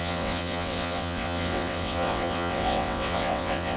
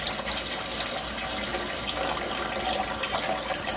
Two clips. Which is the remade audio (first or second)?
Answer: first